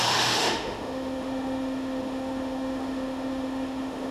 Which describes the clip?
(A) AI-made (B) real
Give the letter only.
A